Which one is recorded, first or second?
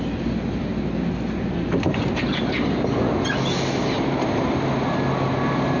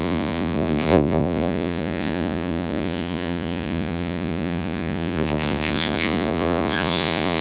first